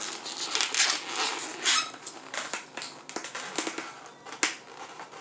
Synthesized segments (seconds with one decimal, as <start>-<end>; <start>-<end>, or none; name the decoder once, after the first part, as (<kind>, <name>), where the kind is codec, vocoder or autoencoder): none